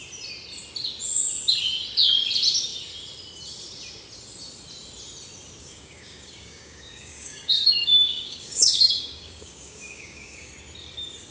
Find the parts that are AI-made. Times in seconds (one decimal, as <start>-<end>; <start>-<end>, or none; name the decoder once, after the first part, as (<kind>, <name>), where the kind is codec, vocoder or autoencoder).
5.6-10.5 (codec, DAC)